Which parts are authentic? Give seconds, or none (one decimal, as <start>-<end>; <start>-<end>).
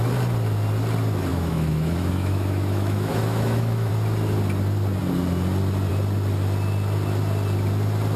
0.0-1.3; 3.9-8.2